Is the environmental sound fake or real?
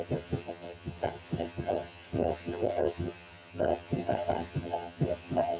fake